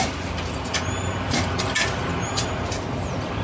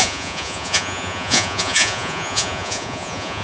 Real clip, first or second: first